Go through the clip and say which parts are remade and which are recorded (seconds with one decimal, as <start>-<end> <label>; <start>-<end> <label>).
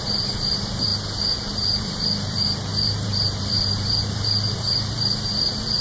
0.0-0.9 remade; 0.9-1.8 recorded; 1.8-5.8 remade